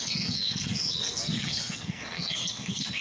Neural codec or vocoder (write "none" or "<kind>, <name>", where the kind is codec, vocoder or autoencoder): codec, SNAC